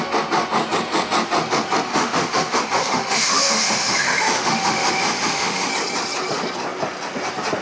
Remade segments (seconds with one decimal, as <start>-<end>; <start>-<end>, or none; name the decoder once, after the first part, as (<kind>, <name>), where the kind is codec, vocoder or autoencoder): 1.9-5.7 (autoencoder, DAC-VAE)